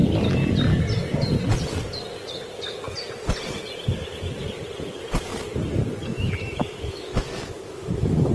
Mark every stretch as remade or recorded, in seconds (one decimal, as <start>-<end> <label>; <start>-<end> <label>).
0.0-6.0 recorded; 6.0-8.3 remade